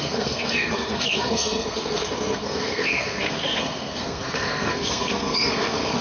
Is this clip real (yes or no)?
no